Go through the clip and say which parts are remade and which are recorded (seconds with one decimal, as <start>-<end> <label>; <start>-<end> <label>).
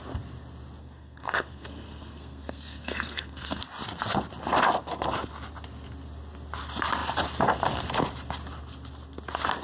0.0-0.8 recorded; 0.8-3.6 remade; 3.6-9.6 recorded